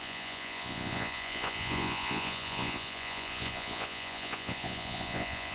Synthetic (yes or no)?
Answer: yes